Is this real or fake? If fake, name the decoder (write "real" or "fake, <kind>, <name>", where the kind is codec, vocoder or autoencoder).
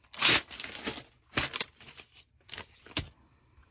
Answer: real